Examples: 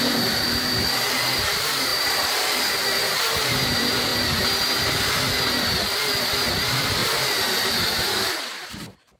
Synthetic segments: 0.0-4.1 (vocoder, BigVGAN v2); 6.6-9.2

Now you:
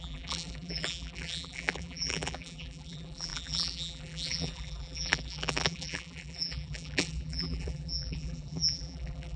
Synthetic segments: 0.0-9.4 (vocoder, BigVGAN v2)